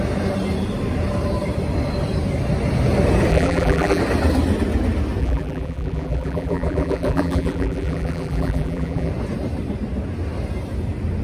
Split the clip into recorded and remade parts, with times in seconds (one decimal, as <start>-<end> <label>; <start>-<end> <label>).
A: 0.0-3.3 recorded; 3.3-4.0 remade; 4.0-5.2 recorded; 5.2-9.1 remade; 9.1-11.2 recorded